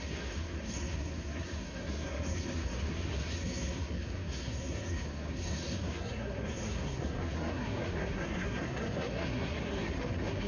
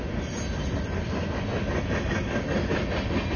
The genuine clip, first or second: second